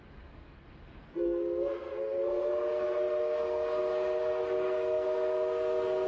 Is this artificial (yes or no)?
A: yes